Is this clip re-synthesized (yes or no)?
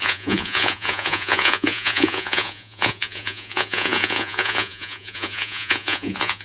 yes